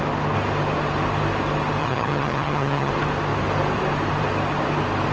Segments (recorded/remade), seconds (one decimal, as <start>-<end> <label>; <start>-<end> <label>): 0.0-1.8 recorded; 1.8-2.9 remade; 2.9-5.1 recorded